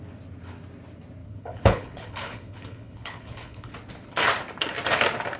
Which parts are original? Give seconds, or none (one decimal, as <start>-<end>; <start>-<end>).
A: 0.0-1.2; 3.7-5.4